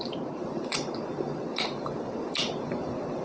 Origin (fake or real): fake